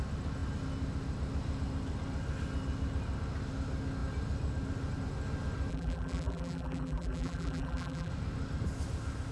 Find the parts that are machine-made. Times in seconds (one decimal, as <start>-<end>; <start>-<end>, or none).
5.7-8.1